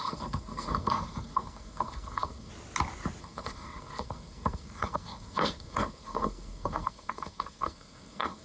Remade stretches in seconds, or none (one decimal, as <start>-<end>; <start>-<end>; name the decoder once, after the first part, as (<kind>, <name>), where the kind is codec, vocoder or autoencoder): 0.0-2.5 (codec, SNAC); 3.2-8.4